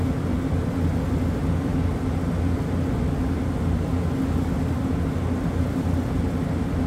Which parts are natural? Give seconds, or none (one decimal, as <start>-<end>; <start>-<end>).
0.0-6.9